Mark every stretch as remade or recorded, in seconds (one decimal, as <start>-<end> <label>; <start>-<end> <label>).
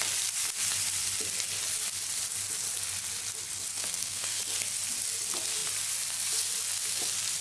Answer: 0.0-3.7 recorded; 3.7-4.4 remade; 4.4-7.4 recorded